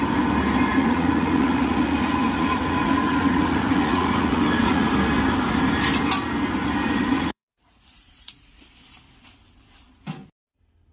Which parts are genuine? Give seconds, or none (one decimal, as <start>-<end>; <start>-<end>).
0.0-0.7; 4.9-7.1; 8.6-10.9